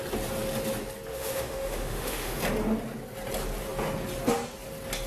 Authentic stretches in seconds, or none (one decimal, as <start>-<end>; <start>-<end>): 0.0-1.1; 2.4-5.1